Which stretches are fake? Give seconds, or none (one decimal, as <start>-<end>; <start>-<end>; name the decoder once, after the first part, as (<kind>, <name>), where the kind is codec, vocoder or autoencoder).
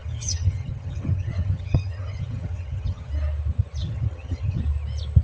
0.0-3.1 (vocoder, HiFi-GAN); 3.8-4.6